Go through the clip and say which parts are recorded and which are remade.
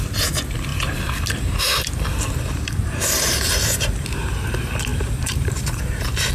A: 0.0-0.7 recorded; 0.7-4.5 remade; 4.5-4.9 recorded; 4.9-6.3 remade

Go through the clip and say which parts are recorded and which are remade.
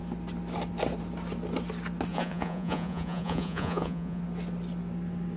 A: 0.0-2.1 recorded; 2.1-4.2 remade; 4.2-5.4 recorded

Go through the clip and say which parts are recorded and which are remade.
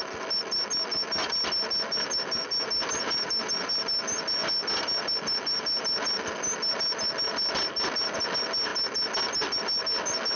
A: 0.0-10.4 recorded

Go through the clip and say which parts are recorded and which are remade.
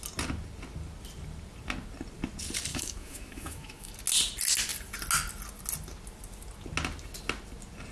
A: 0.0-2.7 recorded; 2.7-3.9 remade; 3.9-7.9 recorded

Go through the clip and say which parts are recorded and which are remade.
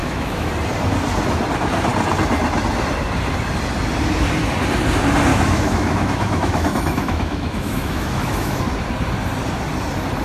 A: 0.0-0.5 remade; 0.5-5.3 recorded; 5.3-8.6 remade; 8.6-10.2 recorded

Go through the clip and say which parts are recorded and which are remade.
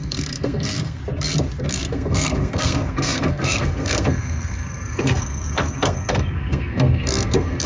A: 0.0-1.0 remade; 1.0-1.6 recorded; 1.6-7.7 remade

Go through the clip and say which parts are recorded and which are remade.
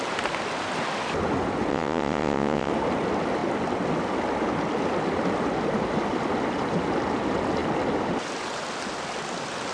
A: 0.0-1.7 recorded; 1.7-2.7 remade; 2.7-9.7 recorded